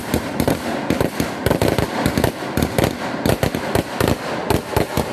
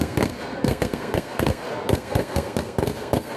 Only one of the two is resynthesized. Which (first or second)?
second